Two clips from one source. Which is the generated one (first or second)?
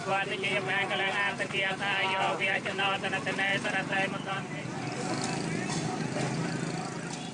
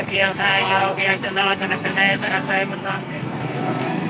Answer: second